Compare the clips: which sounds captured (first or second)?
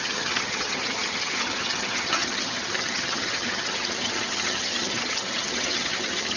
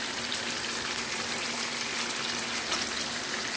second